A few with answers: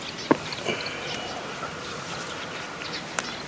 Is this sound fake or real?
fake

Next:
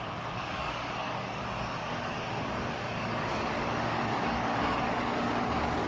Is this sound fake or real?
fake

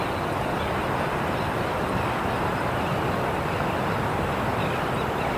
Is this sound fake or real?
real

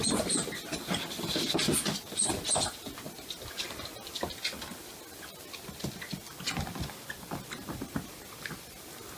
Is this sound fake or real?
real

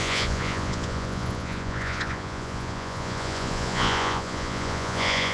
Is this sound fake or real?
fake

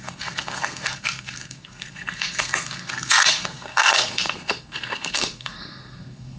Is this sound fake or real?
fake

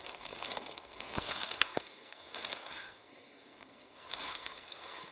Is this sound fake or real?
fake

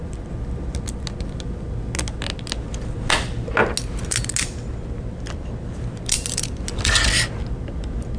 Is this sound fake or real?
real